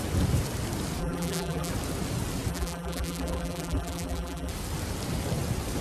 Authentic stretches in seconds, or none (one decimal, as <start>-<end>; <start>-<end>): 0.0-1.0; 1.7-2.5; 4.5-5.8